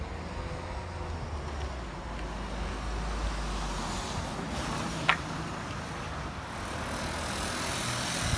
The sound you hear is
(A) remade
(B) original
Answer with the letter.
B